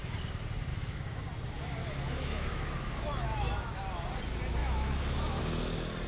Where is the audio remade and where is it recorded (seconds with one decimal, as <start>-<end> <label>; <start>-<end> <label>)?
0.0-0.7 recorded; 0.7-1.2 remade; 1.2-1.8 recorded; 1.8-3.8 remade; 3.8-4.6 recorded; 4.6-5.4 remade; 5.4-6.1 recorded